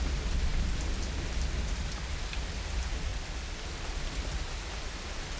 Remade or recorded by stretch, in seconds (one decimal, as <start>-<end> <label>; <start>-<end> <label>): 0.0-5.4 recorded